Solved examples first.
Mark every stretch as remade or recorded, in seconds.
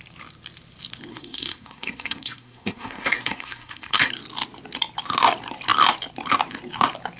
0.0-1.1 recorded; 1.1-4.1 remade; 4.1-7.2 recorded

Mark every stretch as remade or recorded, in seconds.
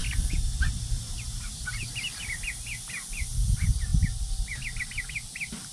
0.0-5.7 recorded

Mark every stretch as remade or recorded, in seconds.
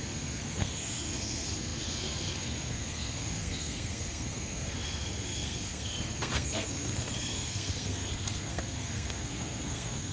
0.0-10.1 remade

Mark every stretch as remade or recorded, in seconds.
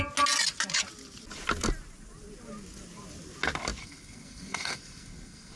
0.0-3.8 recorded; 3.8-5.6 remade